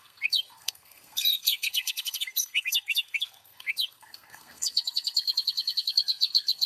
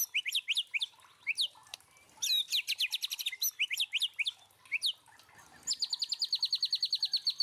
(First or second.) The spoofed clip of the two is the first